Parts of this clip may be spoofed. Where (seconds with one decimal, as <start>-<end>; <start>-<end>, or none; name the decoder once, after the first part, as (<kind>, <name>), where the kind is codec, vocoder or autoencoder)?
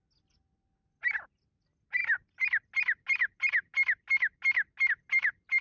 none